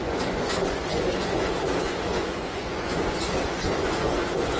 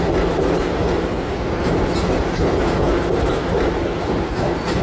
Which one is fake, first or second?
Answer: first